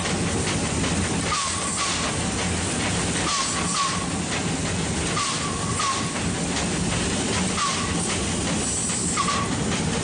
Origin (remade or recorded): recorded